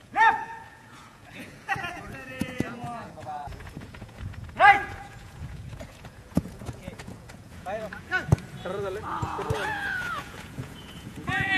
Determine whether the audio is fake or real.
fake